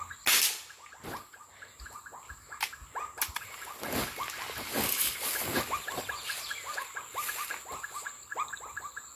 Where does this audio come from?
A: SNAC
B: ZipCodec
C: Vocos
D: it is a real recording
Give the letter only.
D